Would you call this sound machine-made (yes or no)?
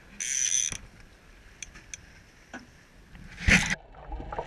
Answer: no